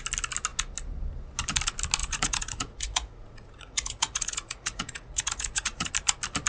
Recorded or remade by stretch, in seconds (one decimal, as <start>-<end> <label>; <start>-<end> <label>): 0.0-2.0 recorded; 2.0-5.9 remade; 5.9-6.5 recorded